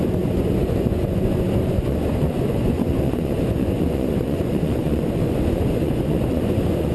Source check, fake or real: fake